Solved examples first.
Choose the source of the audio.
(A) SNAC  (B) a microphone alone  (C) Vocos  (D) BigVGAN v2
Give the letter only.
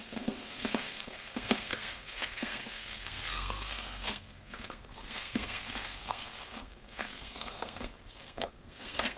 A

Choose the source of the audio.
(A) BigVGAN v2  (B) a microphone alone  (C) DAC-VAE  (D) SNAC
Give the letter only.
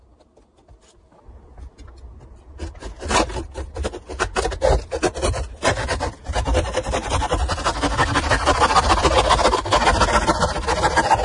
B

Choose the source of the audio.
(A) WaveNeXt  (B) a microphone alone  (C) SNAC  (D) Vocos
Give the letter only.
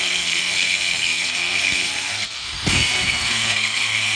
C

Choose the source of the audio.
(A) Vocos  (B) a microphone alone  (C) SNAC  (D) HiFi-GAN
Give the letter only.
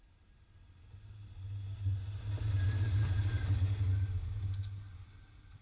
B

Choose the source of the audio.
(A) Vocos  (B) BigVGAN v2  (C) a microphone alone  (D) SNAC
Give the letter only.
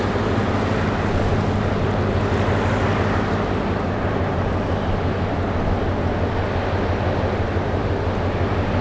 C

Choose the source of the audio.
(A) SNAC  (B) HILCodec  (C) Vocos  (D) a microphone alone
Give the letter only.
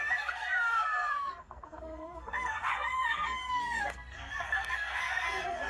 A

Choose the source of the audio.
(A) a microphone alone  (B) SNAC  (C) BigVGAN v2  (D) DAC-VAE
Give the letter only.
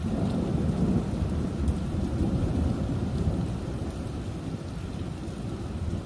A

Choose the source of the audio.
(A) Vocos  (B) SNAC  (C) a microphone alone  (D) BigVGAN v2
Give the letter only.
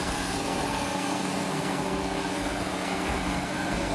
B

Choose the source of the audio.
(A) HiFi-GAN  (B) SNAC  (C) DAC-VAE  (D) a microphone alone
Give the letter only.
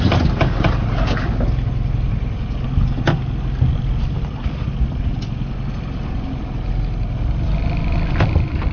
D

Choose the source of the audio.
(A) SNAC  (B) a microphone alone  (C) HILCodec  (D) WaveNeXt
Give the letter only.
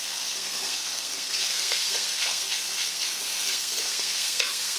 A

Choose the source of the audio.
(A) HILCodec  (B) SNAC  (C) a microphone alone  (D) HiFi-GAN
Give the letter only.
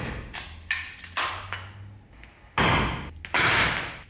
C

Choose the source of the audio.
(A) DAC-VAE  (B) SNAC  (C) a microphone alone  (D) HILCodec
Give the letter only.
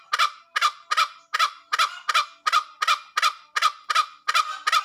C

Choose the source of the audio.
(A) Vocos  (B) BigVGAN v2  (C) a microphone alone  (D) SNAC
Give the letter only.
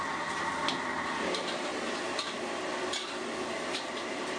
C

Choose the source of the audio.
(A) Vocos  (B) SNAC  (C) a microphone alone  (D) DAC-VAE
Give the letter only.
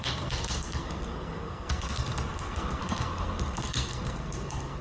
B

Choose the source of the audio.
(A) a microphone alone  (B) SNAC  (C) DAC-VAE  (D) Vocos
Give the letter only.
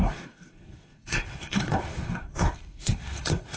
B